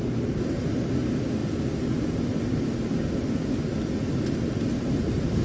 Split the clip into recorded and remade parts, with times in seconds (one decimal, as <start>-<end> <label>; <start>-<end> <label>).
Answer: 0.0-5.4 recorded